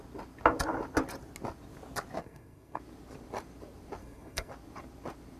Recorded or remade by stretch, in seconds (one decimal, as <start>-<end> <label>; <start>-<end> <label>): 0.0-2.2 recorded; 2.2-2.8 remade; 2.8-4.0 recorded; 4.0-4.5 remade; 4.5-5.4 recorded